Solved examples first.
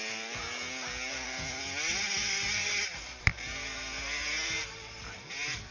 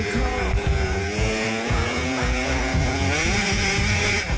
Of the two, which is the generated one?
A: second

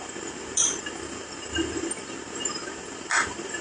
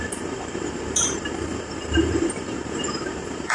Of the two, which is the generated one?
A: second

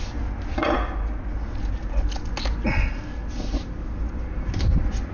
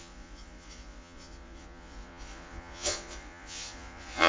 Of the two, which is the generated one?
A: second